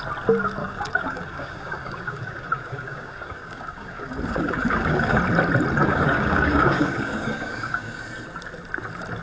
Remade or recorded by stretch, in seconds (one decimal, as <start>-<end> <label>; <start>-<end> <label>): 0.0-0.6 recorded; 0.6-5.2 remade; 5.2-5.8 recorded; 5.8-8.0 remade; 8.0-9.2 recorded